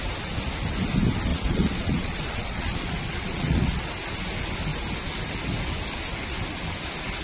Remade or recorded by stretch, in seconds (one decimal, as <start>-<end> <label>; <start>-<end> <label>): 0.0-1.3 recorded; 1.3-3.8 remade; 3.8-7.2 recorded